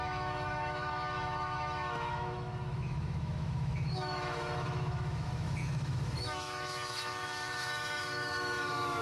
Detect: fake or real fake